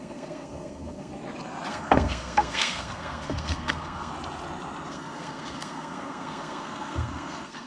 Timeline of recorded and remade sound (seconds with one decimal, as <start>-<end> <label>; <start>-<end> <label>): 0.0-1.1 remade; 1.1-1.7 recorded; 1.7-4.1 remade; 4.1-4.9 recorded; 4.9-7.7 remade